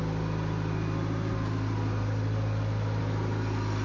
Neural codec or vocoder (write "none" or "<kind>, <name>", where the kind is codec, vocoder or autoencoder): none